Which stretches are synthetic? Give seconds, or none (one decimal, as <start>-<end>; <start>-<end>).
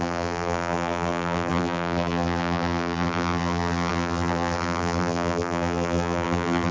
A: 0.0-6.7